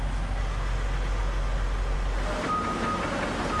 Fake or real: real